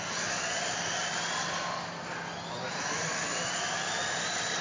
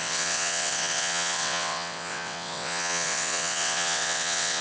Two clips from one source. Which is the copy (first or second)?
second